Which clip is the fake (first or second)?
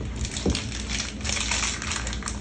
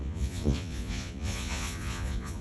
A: second